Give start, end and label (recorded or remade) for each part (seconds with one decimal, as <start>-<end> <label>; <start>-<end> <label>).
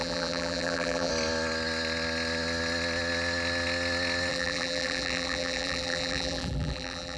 0.0-1.1 remade; 1.1-4.3 recorded; 4.3-7.2 remade